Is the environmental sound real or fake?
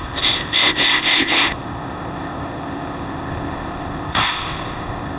fake